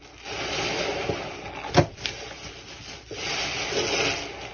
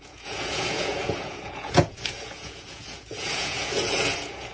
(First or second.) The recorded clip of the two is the first